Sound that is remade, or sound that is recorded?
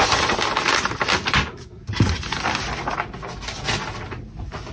recorded